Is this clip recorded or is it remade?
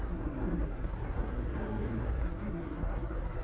remade